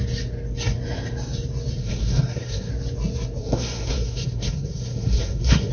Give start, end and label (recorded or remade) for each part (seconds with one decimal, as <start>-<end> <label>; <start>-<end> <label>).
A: 0.0-1.8 recorded; 1.8-2.7 remade; 2.7-3.4 recorded; 3.4-5.7 remade